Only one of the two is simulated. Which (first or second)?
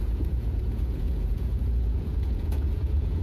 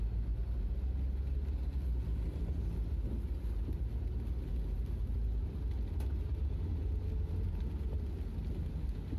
first